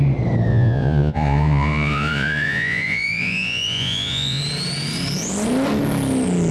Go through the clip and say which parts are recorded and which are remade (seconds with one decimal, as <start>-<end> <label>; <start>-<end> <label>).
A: 0.0-0.5 recorded; 0.5-4.4 remade; 4.4-6.5 recorded